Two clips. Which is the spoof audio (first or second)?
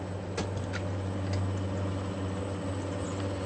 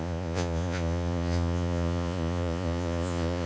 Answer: second